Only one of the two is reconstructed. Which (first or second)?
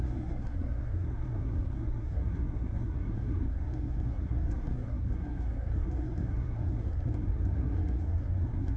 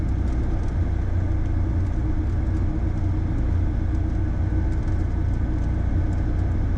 first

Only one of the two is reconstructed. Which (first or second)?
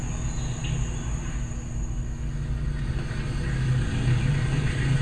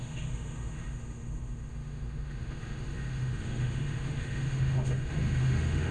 second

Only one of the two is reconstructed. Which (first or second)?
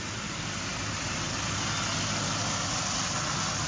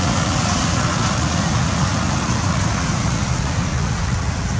second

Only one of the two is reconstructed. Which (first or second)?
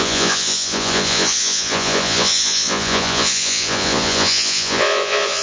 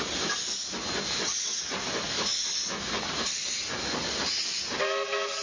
first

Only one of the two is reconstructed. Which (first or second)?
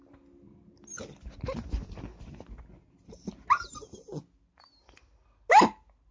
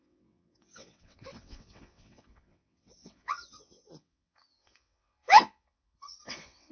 second